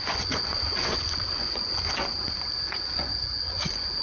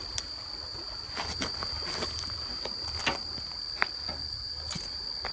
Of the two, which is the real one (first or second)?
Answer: second